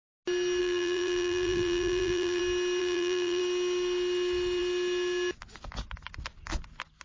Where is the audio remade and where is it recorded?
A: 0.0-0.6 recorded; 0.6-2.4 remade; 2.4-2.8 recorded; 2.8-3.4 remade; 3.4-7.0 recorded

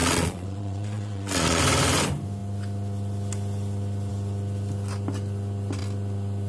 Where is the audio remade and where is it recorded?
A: 0.0-1.6 remade; 1.6-6.5 recorded